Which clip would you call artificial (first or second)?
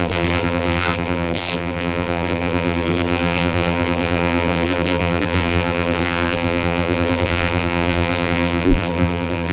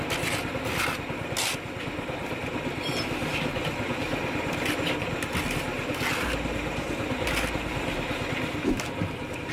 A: first